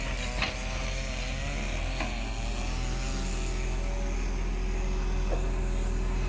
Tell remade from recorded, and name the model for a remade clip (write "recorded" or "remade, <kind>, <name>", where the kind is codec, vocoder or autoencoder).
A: recorded